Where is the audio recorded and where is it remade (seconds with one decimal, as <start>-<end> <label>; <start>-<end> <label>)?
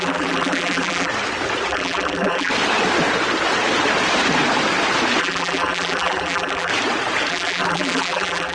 0.0-1.1 remade; 1.1-1.7 recorded; 1.7-2.5 remade; 2.5-5.2 recorded; 5.2-6.7 remade; 6.7-7.3 recorded; 7.3-8.5 remade